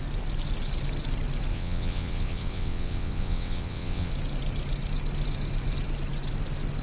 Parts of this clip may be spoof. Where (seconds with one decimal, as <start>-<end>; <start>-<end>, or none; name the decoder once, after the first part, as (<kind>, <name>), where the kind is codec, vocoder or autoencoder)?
1.5-4.1 (vocoder, WaveNeXt)